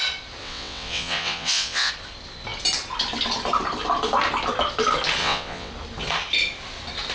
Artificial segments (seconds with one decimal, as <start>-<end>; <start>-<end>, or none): 0.4-1.9; 5.2-5.7